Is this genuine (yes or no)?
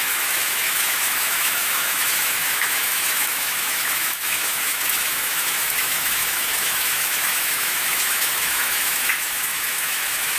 no